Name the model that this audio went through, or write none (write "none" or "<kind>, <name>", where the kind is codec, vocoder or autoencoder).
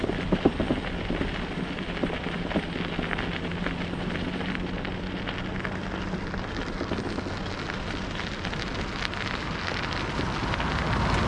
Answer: none